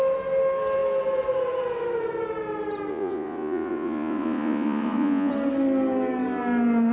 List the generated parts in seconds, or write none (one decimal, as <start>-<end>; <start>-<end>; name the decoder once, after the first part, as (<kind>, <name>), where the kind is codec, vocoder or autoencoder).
2.9-5.3 (vocoder, Vocos)